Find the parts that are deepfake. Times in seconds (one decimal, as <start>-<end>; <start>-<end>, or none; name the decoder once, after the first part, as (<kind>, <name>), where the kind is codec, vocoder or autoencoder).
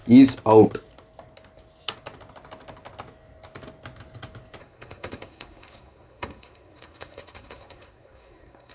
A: 4.6-8.7 (codec, SNAC)